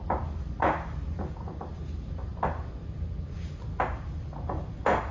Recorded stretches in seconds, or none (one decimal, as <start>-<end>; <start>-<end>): 0.0-5.1